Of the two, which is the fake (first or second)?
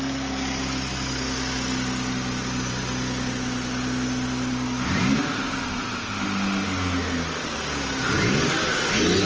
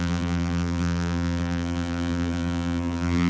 second